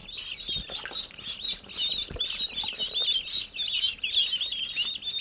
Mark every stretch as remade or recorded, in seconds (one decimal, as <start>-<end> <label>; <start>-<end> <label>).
0.0-5.2 recorded